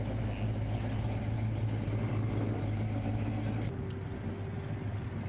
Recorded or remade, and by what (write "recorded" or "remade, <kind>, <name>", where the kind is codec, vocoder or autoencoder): recorded